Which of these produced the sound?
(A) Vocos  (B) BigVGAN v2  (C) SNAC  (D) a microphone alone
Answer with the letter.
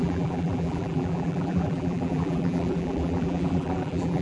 B